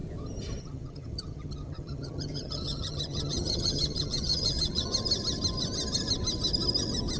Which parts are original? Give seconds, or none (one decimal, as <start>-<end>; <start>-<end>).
0.0-0.6; 4.9-7.2